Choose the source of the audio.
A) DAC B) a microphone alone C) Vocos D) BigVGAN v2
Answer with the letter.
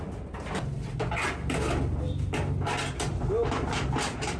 B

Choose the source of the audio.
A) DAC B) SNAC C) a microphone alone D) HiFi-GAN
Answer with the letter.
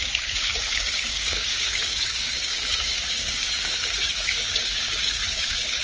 A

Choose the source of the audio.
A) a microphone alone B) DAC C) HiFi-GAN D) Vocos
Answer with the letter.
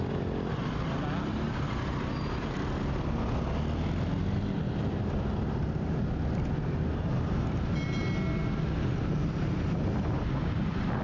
A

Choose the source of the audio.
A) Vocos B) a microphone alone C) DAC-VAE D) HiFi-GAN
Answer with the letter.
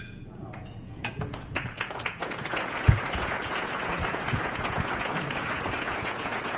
A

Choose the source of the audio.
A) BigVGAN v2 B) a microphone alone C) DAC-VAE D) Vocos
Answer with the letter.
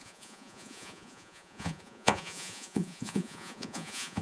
D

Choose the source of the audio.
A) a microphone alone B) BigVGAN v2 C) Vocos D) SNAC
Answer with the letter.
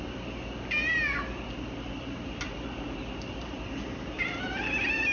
A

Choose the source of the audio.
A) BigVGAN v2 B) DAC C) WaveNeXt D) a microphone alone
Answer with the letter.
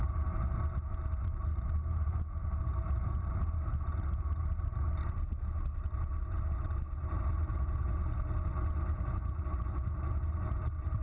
D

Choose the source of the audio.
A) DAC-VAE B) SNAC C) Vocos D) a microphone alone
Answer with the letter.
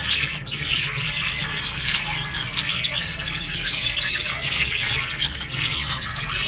B